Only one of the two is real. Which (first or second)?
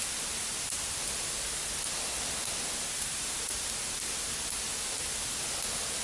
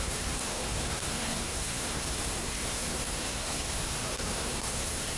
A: first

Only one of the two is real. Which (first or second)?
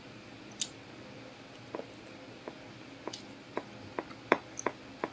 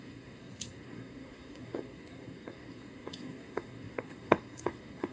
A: first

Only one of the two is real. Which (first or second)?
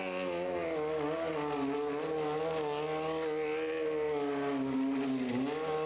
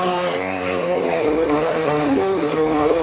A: first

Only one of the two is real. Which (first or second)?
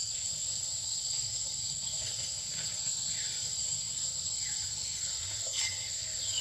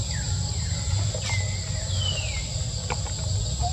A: second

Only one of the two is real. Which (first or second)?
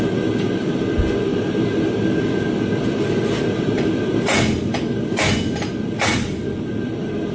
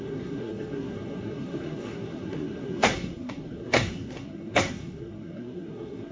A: first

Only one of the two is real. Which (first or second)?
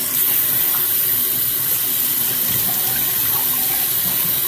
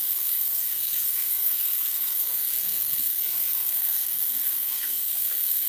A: first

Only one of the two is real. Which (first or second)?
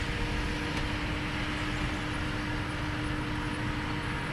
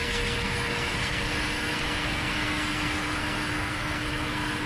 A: first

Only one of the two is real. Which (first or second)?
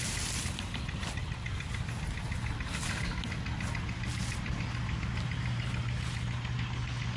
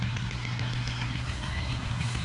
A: first